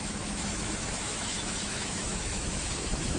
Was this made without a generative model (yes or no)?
no